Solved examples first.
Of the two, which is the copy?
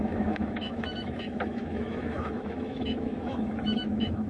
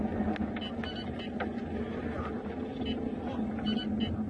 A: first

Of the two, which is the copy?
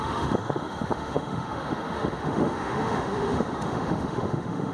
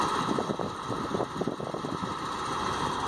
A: first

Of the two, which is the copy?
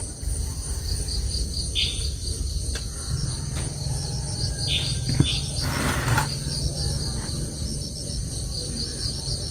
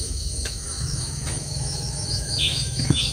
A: second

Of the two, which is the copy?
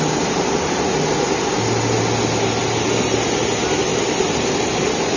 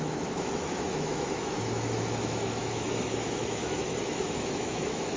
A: second